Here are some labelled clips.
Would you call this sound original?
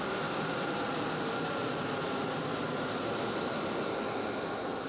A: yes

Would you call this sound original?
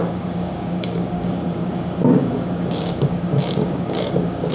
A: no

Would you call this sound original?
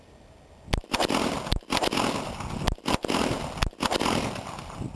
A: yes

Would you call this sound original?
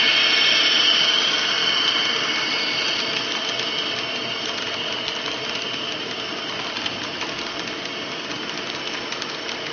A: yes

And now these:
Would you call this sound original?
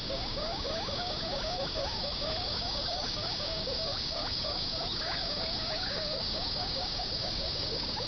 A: no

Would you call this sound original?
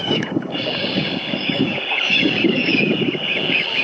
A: no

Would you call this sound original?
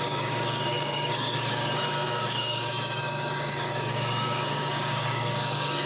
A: no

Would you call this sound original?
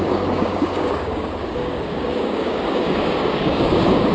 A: no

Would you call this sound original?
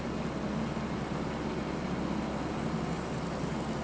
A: yes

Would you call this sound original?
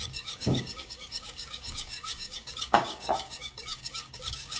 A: no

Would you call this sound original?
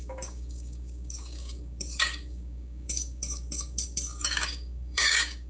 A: no